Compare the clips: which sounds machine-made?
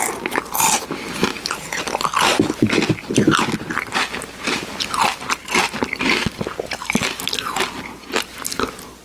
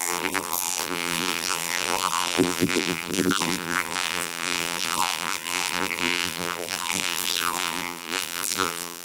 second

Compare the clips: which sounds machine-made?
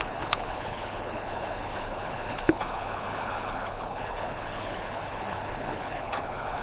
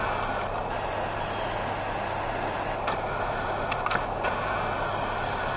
first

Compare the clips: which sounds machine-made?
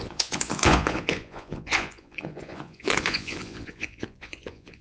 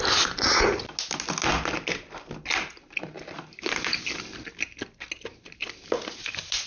first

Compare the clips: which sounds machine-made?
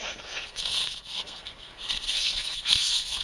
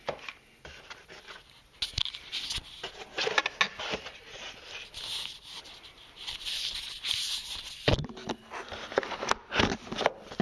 first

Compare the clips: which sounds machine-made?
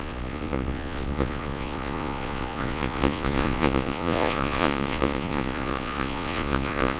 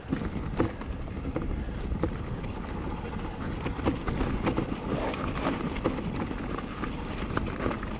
first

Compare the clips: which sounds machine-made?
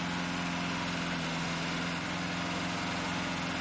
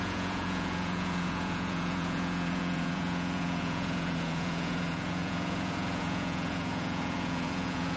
second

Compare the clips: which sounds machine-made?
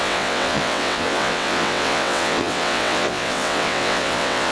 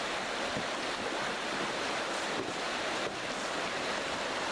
first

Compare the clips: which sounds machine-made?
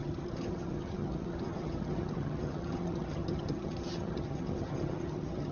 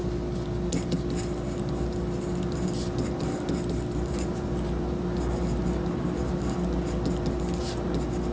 first